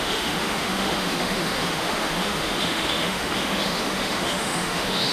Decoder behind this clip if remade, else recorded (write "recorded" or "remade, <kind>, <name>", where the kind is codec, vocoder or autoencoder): remade, autoencoder, DAC-VAE